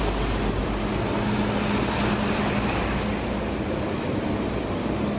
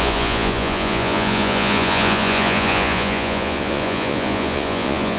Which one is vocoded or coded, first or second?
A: second